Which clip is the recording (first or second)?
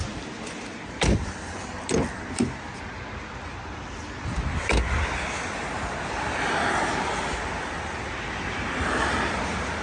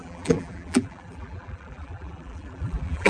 first